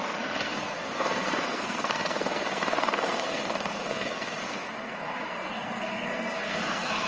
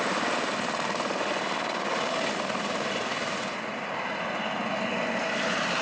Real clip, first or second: second